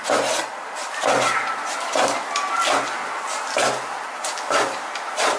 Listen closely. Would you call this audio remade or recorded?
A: recorded